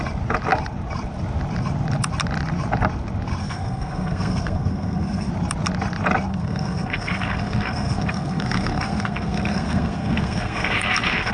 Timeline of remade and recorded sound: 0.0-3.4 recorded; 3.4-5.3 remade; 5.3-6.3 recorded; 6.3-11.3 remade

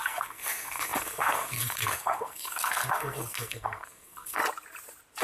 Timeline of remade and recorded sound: 0.0-4.4 remade; 4.4-5.2 recorded

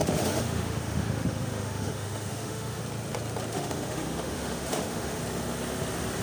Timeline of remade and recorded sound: 0.0-2.8 remade; 2.8-3.5 recorded; 3.5-5.2 remade; 5.2-6.2 recorded

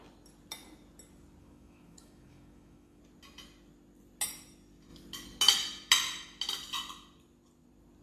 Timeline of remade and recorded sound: 0.0-1.4 recorded; 1.4-3.0 remade; 3.0-8.0 recorded

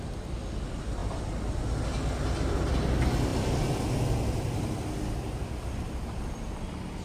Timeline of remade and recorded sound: 0.0-7.0 recorded

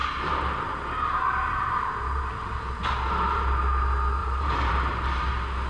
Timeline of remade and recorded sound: 0.0-2.9 remade; 2.9-4.2 recorded; 4.2-5.3 remade; 5.3-5.7 recorded